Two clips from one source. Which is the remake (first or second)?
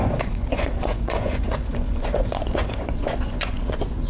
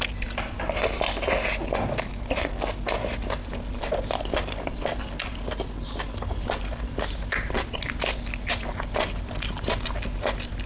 first